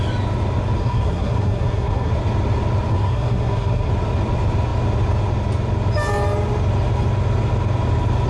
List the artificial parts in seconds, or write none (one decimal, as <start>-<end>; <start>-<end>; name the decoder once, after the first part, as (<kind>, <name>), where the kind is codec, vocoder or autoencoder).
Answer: 0.8-2.1 (codec, SNAC); 2.9-3.9